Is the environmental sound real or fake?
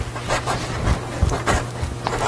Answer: real